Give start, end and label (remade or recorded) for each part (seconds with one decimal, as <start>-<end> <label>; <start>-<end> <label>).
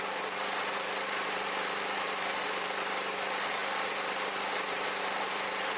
0.0-5.8 remade